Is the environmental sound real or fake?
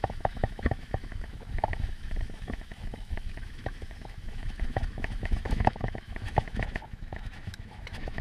fake